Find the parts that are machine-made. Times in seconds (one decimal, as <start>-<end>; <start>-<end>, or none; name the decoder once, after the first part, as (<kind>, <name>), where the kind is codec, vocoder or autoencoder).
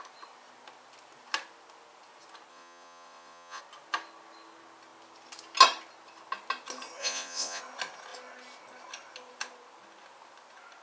2.5-3.6 (vocoder, Vocos); 7.0-7.6